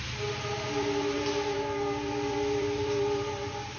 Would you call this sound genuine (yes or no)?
no